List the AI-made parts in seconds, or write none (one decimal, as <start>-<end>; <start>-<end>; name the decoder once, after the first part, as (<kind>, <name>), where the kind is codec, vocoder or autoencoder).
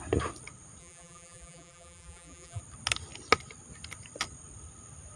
0.8-2.6 (vocoder, BigVGAN v2)